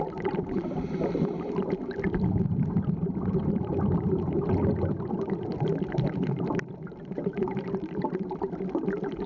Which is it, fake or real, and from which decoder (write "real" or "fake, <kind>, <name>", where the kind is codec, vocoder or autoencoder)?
fake, vocoder, BigVGAN v2